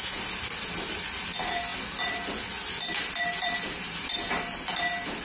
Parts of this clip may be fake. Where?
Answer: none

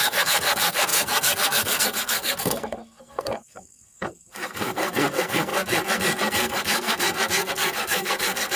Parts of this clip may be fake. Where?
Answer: 0.0-8.6

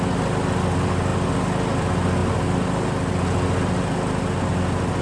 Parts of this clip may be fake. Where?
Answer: none

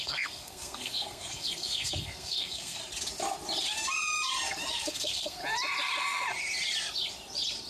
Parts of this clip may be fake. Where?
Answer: 0.0-2.8; 4.7-5.4

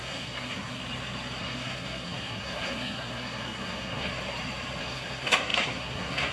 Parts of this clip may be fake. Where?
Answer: 0.0-0.8; 1.4-4.1; 4.8-6.3